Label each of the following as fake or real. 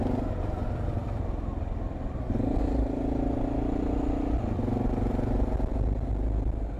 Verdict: real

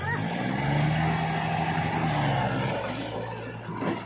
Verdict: real